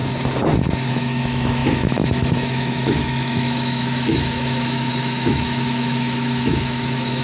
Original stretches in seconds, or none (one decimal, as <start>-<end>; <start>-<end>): 0.0-0.9